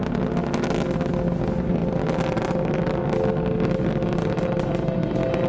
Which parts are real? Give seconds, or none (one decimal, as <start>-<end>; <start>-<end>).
0.0-5.5